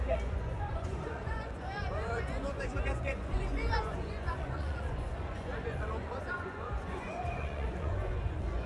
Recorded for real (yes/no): no